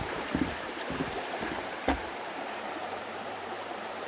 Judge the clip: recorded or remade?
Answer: remade